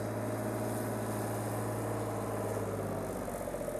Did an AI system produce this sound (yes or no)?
no